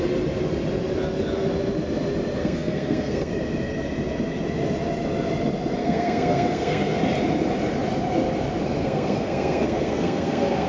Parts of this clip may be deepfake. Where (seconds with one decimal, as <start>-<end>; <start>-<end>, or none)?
2.4-3.3; 5.8-7.0; 8.8-10.7